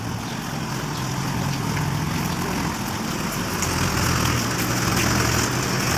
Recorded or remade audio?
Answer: recorded